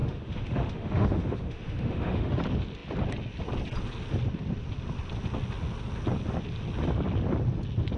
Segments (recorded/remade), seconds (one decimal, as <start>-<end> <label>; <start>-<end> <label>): 0.0-2.4 remade; 2.4-8.0 recorded